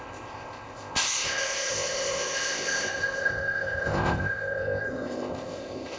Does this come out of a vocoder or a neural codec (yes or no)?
yes